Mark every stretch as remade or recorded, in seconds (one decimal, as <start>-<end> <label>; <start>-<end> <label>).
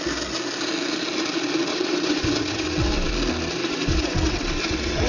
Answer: 0.0-1.7 recorded; 1.7-3.1 remade; 3.1-3.6 recorded; 3.6-5.1 remade